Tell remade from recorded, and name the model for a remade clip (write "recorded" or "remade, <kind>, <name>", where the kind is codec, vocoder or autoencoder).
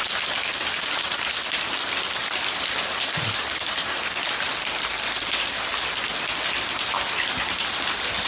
recorded